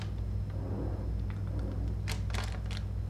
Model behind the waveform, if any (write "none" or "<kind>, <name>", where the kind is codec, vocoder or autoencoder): none